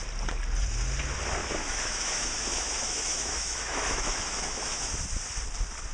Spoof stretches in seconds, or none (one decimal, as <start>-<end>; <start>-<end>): 1.4-4.9